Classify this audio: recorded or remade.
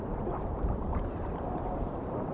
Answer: remade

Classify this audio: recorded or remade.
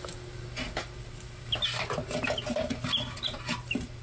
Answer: recorded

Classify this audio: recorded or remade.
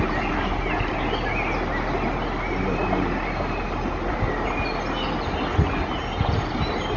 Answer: recorded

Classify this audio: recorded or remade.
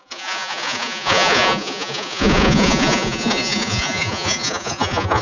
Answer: remade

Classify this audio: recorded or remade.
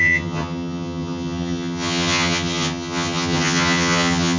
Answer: remade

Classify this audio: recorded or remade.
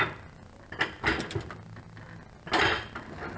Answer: recorded